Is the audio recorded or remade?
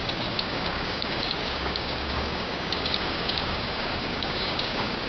remade